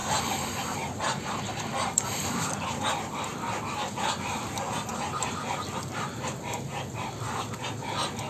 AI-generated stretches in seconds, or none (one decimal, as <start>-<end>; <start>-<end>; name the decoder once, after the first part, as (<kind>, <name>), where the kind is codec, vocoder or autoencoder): 0.0-4.9 (vocoder, BigVGAN v2); 5.4-8.3